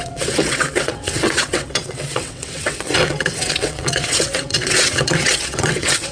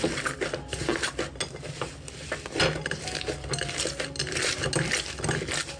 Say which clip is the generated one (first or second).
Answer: first